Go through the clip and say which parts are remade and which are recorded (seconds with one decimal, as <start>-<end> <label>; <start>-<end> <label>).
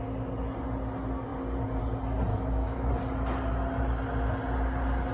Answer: 0.0-2.3 recorded; 2.3-2.9 remade; 2.9-5.1 recorded